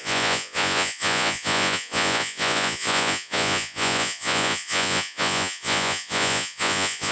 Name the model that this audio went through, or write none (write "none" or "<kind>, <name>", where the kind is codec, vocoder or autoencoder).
vocoder, Vocos